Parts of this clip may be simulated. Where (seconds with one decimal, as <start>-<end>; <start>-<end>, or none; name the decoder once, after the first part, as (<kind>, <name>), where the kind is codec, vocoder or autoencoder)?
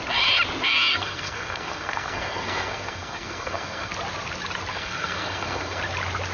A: 0.9-3.9 (codec, SNAC); 4.7-5.8